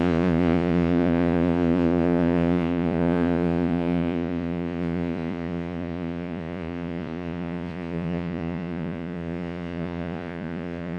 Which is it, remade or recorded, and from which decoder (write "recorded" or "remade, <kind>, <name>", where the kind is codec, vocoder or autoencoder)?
remade, vocoder, Vocos